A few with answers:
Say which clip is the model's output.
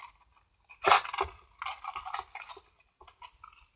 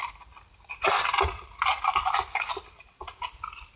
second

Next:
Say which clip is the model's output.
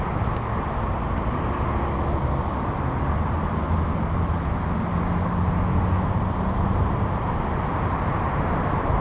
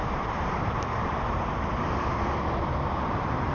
second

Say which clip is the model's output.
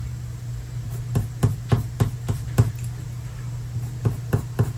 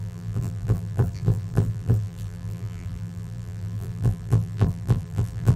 second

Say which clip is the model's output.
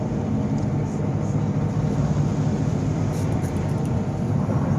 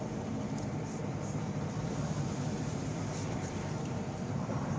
second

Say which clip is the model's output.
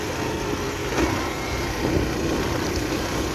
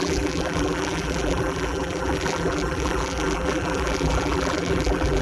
second